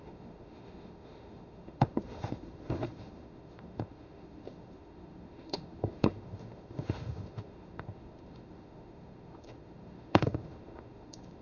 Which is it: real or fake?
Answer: fake